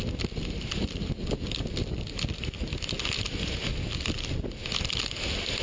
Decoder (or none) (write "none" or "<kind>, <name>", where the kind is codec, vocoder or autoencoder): none